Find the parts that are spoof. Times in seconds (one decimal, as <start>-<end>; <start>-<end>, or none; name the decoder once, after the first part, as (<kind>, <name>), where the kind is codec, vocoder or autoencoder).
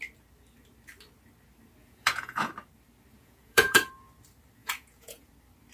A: 1.8-2.5 (vocoder, Vocos); 3.1-3.9; 4.6-5.3